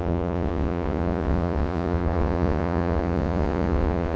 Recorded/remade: remade